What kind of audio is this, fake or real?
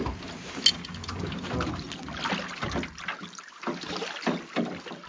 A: real